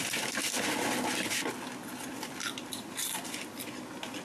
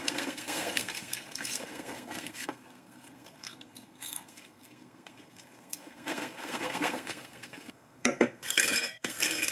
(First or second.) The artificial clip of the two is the second